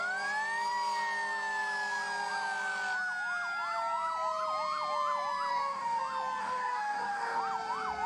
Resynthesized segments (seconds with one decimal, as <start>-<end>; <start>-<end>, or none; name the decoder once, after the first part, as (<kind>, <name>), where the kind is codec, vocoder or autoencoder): 5.5-6.0 (codec, DAC); 6.4-7.4

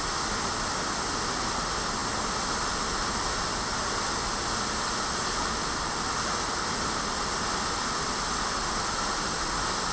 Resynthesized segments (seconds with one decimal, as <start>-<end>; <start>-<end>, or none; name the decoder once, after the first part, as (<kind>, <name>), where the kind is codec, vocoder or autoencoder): none

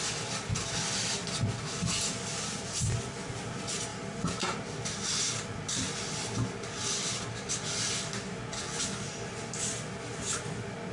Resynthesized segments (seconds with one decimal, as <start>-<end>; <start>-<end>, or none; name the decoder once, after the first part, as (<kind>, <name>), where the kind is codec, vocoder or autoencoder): none

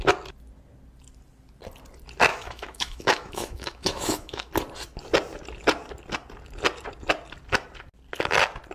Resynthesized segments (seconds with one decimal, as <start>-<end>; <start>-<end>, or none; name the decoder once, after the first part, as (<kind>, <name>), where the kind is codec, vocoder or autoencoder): 2.3-4.5 (autoencoder, DAC-VAE)

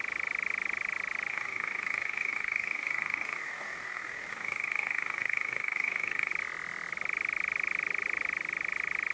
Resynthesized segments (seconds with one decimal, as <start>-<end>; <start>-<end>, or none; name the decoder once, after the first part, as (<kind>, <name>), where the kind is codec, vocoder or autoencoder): 1.3-6.3 (codec, DAC)

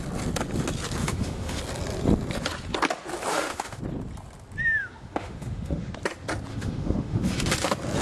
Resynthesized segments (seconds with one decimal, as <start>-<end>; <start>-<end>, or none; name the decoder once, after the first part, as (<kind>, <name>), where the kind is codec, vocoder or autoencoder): 1.0-1.6 (autoencoder, DAC-VAE); 3.3-3.8; 4.8-5.9; 6.5-7.5